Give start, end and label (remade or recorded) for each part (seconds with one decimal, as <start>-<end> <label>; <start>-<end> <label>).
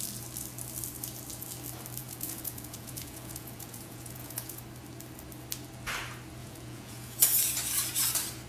0.0-2.0 recorded; 2.0-4.6 remade; 4.6-6.4 recorded; 6.4-7.2 remade; 7.2-8.5 recorded